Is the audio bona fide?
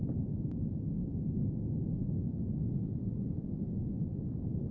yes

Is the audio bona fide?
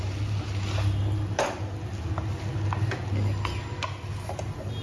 yes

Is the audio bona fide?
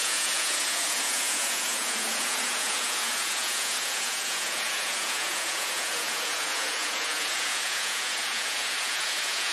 no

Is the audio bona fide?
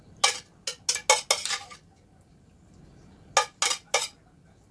yes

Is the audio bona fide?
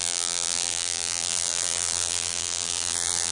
no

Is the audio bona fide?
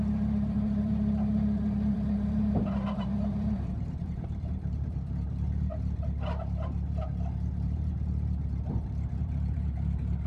no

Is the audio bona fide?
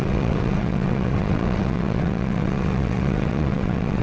no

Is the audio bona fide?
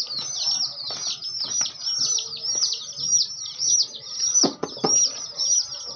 yes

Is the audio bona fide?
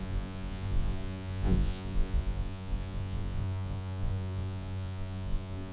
no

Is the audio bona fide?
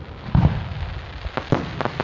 yes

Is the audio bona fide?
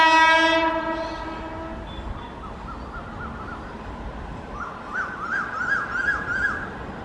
yes